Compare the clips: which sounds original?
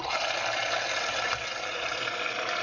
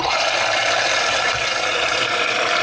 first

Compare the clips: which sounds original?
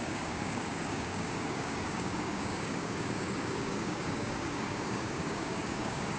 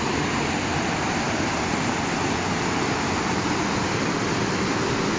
second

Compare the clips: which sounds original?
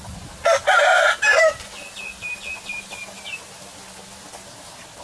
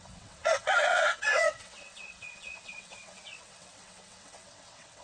first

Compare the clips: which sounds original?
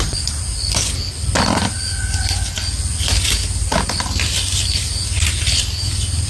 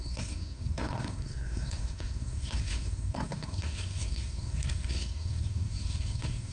first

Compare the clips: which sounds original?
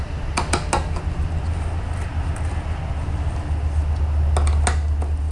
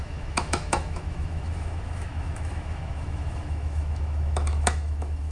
first